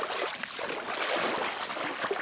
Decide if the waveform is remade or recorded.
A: recorded